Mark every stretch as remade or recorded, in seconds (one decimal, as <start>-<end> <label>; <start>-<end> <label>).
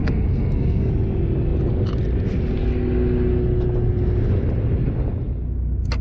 0.0-0.9 remade; 0.9-6.0 recorded